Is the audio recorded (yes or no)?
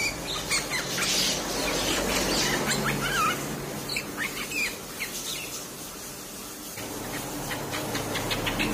yes